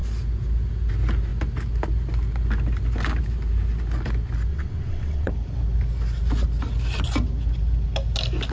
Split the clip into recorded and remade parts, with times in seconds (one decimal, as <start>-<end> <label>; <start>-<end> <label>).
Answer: 0.0-4.5 recorded; 4.5-5.3 remade; 5.3-8.5 recorded